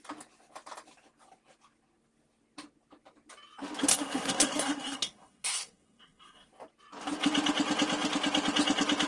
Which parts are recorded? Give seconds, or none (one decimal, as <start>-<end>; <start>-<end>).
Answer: 0.0-3.9; 6.5-9.1

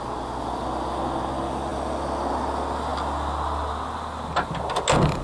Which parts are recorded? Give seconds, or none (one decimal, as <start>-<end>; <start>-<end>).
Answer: 0.0-5.2

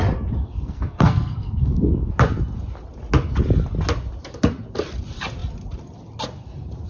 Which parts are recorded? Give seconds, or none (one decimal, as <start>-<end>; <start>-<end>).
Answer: 0.0-0.4; 2.1-6.9

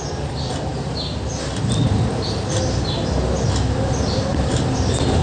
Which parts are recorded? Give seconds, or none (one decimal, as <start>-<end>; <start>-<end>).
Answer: 0.0-5.2

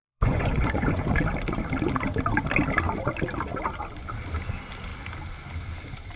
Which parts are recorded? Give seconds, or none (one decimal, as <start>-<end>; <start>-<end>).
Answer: 1.1-6.2

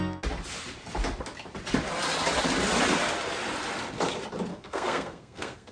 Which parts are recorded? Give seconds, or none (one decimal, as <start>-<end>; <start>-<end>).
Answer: 0.0-4.5

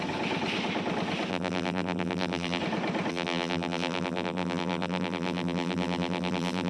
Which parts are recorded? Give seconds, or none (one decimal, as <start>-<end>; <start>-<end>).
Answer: 0.0-1.3; 2.6-3.1